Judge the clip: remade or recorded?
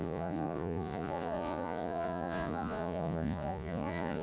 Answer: remade